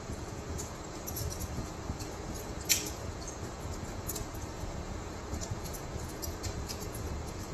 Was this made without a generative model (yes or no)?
no